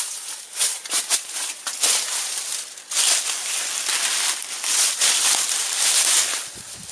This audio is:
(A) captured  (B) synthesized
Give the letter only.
A